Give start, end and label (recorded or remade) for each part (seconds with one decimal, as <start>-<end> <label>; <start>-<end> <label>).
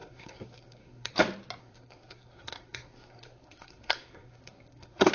0.0-1.1 remade; 1.1-1.6 recorded; 1.6-5.1 remade